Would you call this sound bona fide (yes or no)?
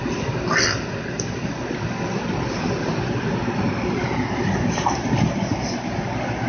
yes